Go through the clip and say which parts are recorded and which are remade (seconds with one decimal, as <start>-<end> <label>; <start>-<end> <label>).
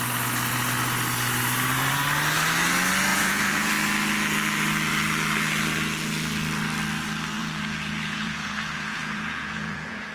0.0-3.1 recorded; 3.1-3.7 remade; 3.7-7.4 recorded; 7.4-10.1 remade